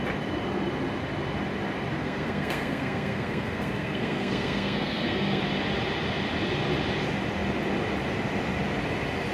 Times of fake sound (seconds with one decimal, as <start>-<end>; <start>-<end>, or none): 2.0-5.4